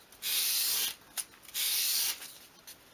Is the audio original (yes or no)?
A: yes